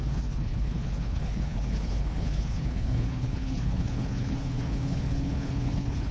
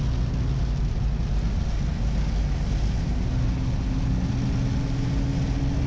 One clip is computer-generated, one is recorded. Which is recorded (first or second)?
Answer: second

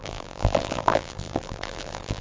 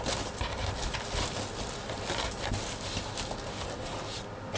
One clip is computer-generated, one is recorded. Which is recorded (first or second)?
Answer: second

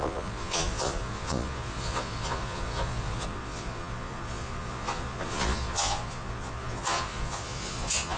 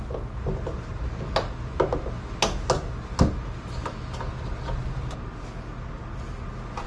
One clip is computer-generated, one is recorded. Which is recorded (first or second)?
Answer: second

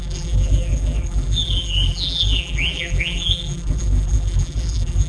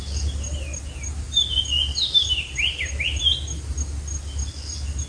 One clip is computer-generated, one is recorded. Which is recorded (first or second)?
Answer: second